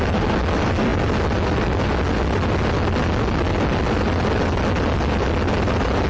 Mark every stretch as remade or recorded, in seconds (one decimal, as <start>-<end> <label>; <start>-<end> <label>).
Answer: 0.0-6.1 recorded